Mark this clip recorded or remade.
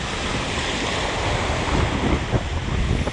recorded